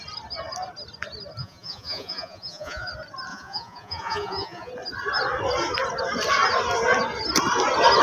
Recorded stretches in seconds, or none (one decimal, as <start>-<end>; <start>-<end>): 0.0-1.4; 2.9-3.3; 4.7-8.0